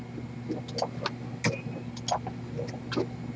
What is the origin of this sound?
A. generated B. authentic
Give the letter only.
B